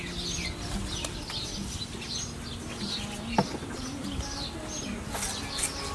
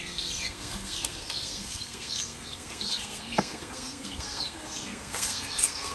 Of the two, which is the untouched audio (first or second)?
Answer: first